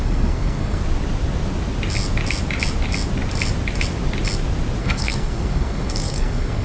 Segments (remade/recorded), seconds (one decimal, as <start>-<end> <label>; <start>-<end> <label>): 0.0-0.8 remade; 0.8-4.8 recorded; 4.8-6.6 remade